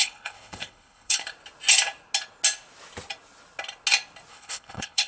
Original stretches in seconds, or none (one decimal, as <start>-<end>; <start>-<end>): 1.2-4.3